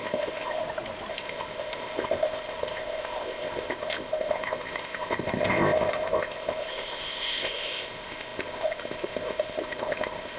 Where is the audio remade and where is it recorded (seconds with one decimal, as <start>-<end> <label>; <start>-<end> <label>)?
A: 0.0-0.6 remade; 0.6-1.1 recorded; 1.1-10.4 remade